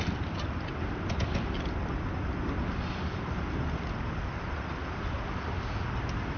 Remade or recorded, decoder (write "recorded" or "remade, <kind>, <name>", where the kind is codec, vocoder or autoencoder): recorded